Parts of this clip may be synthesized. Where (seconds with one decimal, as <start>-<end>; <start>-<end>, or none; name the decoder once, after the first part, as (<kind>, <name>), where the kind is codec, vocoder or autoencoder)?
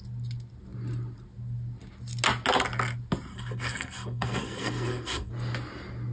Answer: 3.3-5.3 (codec, SNAC)